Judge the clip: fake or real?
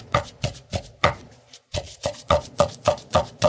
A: fake